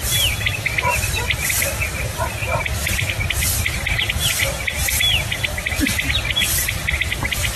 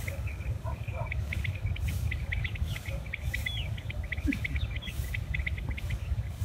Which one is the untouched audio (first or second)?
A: first